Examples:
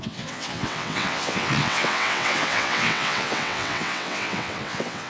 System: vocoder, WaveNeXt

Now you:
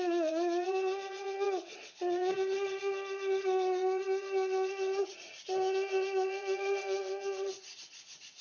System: vocoder, WaveNeXt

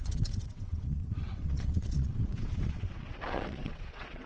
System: vocoder, WaveNeXt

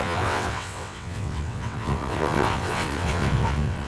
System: vocoder, WaveNeXt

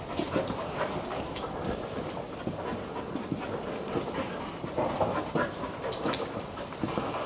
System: none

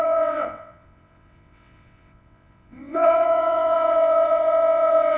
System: vocoder, WaveNeXt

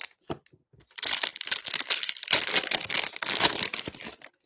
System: none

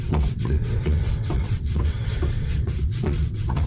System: vocoder, WaveNeXt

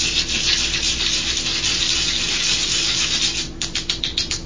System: none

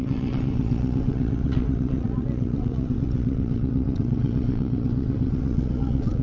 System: vocoder, WaveNeXt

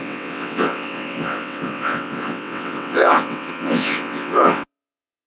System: vocoder, WaveNeXt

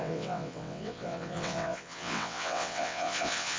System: vocoder, WaveNeXt